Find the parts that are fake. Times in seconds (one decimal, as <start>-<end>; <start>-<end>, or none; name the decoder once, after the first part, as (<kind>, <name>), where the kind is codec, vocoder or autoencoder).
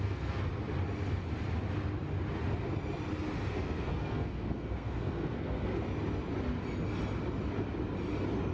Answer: 0.0-0.5 (codec, SNAC); 3.5-5.7